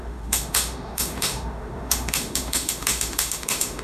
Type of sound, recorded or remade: remade